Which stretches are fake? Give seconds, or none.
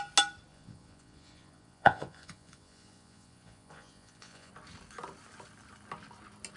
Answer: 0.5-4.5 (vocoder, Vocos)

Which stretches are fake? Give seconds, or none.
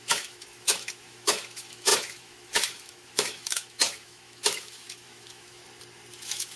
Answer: 0.0-5.6 (autoencoder, DAC-VAE); 6.1-6.6